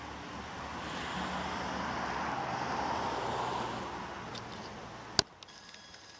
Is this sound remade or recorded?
recorded